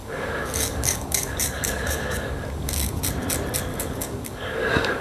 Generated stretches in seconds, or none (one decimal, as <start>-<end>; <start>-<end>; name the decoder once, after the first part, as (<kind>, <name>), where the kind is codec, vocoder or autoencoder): 0.0-3.0 (codec, DAC); 3.7-5.0